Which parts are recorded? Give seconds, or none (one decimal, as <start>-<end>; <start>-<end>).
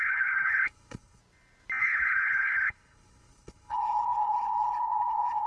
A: 1.2-1.8